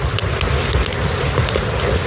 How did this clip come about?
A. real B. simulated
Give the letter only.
A